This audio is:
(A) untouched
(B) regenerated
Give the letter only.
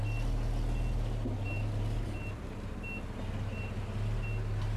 A